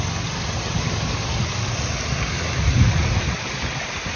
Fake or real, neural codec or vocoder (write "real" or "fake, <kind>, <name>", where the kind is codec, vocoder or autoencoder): real